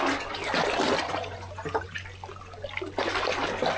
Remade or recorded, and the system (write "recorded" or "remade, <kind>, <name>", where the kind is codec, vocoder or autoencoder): recorded